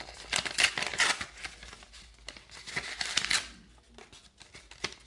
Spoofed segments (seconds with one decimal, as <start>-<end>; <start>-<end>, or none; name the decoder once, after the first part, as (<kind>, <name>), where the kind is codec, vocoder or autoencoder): none